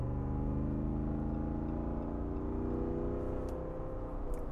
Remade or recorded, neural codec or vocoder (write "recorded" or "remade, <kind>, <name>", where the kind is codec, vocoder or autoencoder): recorded